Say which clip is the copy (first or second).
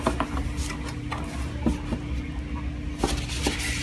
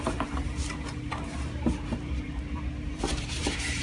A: second